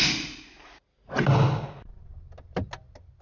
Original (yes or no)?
yes